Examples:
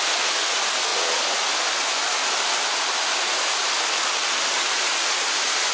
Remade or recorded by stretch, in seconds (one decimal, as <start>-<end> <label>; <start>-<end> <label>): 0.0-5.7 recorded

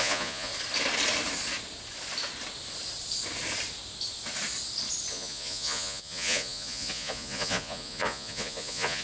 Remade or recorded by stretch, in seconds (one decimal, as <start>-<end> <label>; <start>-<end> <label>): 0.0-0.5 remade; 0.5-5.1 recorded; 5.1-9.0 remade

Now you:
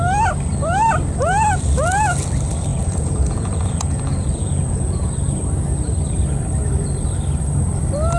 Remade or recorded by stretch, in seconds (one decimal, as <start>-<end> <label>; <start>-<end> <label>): 0.0-2.7 recorded; 2.7-5.1 remade; 5.1-8.2 recorded

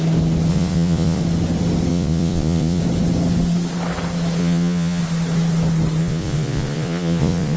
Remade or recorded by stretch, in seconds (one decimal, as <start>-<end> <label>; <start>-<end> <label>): 0.0-0.5 recorded; 0.5-1.2 remade; 1.2-1.9 recorded; 1.9-2.8 remade; 2.8-4.4 recorded; 4.4-5.0 remade; 5.0-6.0 recorded; 6.0-7.6 remade

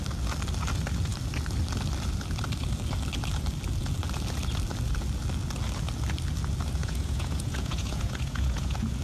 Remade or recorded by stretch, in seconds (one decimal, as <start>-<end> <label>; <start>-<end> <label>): 0.0-6.8 recorded; 6.8-9.0 remade

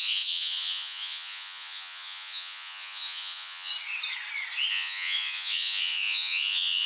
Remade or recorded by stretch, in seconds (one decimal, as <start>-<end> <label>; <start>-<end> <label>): 0.0-3.7 remade; 3.7-4.7 recorded; 4.7-6.9 remade

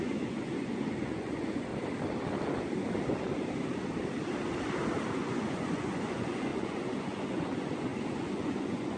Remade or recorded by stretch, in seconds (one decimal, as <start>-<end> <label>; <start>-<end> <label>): 0.0-1.7 remade; 1.7-5.1 recorded; 5.1-9.0 remade

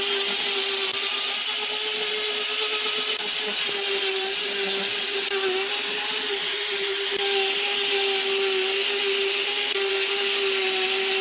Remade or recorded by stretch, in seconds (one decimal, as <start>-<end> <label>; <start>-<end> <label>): 0.0-11.2 recorded